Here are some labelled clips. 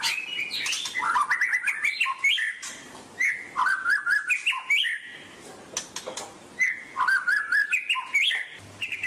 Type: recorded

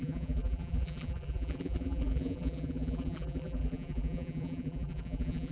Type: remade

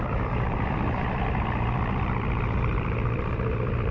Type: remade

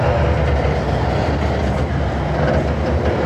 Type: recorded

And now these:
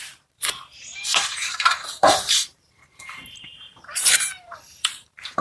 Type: remade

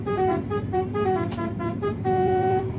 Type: remade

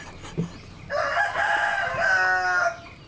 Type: recorded